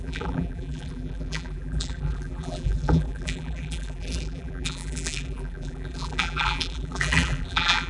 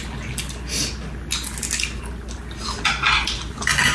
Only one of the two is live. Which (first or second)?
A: second